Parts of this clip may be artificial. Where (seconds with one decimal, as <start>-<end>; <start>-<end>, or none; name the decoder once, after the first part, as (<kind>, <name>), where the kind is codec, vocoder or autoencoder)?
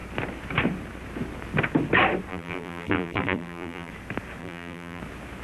2.3-3.9 (vocoder, BigVGAN v2); 4.4-5.0